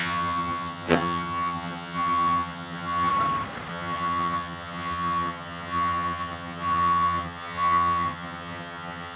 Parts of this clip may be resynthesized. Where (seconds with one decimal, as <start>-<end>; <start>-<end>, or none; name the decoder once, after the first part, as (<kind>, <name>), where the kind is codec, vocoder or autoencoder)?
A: 0.0-3.1 (vocoder, HiFi-GAN); 3.7-9.2